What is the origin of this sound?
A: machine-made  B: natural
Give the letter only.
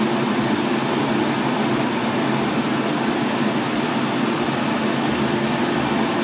B